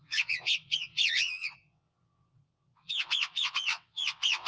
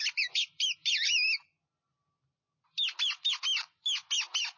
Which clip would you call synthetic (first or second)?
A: first